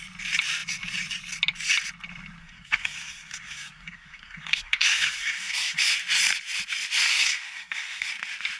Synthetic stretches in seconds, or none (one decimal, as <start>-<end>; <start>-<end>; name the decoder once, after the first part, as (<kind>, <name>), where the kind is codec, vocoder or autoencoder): 2.4-5.9 (codec, SNAC); 7.1-8.1